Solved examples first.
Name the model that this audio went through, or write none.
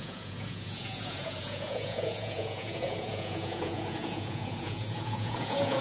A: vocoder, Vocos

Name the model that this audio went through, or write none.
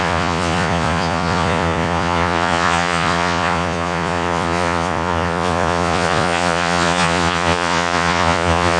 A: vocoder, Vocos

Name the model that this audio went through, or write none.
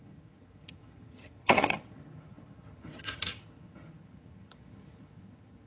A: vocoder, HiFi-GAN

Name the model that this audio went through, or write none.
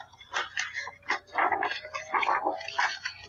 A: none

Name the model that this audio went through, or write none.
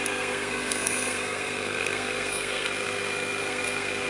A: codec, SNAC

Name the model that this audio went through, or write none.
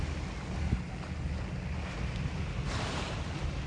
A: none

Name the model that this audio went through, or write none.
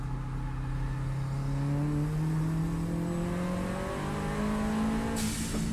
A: none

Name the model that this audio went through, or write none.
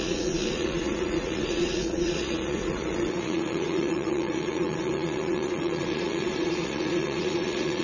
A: vocoder, Vocos